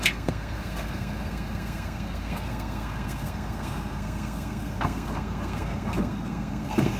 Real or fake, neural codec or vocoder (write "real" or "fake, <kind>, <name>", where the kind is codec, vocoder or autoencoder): fake, codec, SNAC